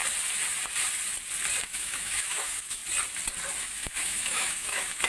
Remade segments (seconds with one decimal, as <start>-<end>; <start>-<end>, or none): 1.6-2.8; 3.6-5.1